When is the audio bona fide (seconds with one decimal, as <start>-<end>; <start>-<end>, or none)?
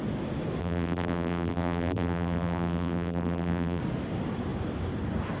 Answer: 0.0-0.6; 3.8-5.4